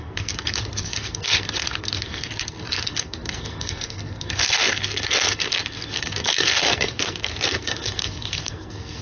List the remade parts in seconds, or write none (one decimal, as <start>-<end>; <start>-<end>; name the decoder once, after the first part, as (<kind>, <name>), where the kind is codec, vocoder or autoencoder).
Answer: 0.0-9.0 (codec, SNAC)